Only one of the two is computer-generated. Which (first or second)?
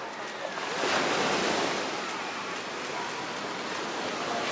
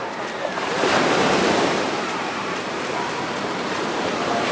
second